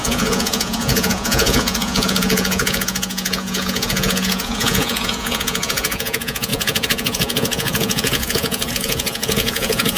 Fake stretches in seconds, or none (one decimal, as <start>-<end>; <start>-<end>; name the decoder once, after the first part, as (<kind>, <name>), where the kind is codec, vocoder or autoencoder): 0.0-10.0 (vocoder, Vocos)